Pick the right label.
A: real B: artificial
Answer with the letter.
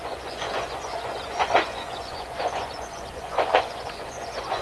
B